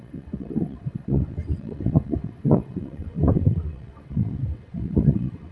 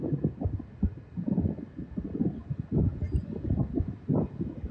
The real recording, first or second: second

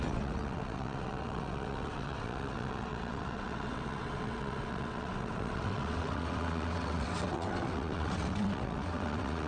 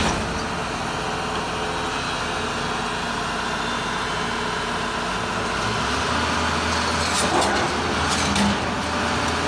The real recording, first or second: second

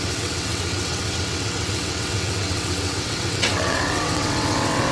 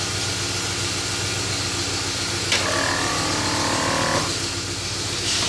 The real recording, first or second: second